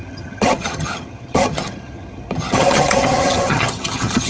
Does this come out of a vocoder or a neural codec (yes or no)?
yes